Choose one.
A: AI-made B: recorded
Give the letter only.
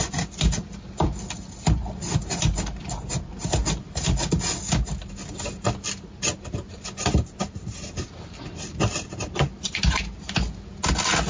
B